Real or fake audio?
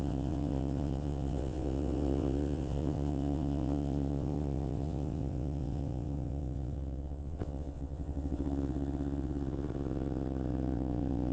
fake